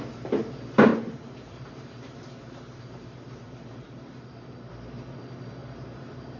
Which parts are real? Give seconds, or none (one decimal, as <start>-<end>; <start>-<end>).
0.0-0.9; 4.7-5.6

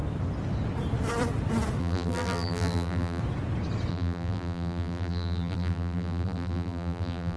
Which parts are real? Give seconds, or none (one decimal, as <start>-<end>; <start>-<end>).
0.0-1.8; 3.2-3.9

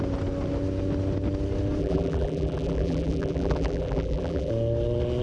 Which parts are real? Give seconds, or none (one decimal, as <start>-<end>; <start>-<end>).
0.0-1.8; 4.5-5.2

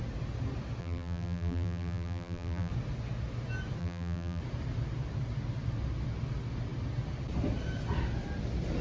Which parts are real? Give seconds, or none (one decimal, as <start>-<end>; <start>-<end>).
0.0-0.8; 2.7-3.8; 4.4-8.8

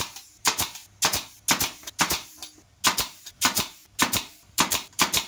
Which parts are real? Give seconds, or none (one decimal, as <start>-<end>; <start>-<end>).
0.8-2.0; 2.4-3.0; 3.8-4.5

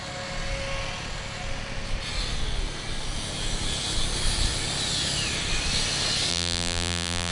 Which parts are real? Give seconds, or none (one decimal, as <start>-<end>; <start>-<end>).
0.0-6.3

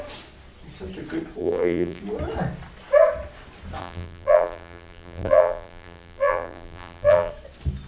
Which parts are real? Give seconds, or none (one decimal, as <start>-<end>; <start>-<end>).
0.0-1.4; 2.0-3.8; 7.3-7.9

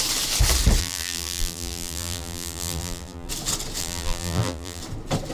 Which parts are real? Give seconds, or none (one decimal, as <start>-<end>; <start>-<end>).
0.0-0.8; 3.3-3.8; 4.8-5.3